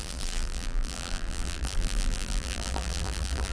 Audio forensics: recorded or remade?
remade